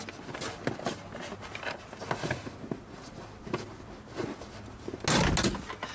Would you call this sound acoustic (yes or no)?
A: yes